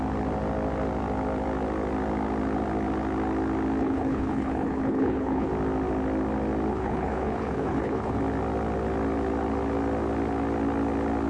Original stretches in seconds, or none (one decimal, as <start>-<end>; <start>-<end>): 0.0-3.8; 5.5-6.7; 8.2-11.3